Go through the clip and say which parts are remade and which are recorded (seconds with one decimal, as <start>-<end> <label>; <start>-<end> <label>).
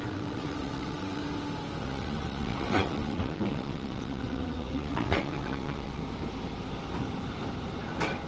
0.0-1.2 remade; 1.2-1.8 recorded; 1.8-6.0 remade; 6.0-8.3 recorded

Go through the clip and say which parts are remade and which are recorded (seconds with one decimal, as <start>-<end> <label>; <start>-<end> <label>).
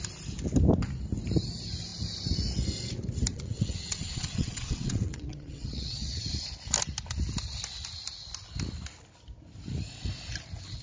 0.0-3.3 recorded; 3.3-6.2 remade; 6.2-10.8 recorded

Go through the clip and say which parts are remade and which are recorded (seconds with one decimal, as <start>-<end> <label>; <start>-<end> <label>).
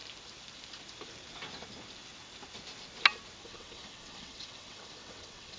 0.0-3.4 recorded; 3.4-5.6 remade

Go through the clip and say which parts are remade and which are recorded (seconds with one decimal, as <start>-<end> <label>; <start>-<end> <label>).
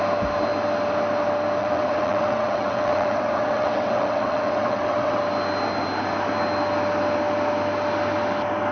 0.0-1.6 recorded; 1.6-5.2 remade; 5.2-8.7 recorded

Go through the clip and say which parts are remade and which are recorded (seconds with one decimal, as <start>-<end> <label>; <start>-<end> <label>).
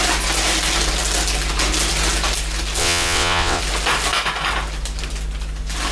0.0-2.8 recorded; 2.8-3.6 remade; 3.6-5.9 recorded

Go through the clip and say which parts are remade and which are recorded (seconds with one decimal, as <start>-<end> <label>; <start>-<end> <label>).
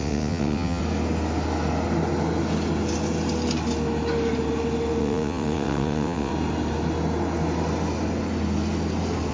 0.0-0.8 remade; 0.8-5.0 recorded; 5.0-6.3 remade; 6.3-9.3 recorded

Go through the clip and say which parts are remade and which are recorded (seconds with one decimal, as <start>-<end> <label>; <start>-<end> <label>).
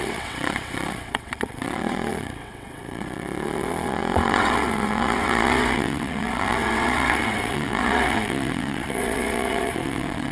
0.0-10.3 remade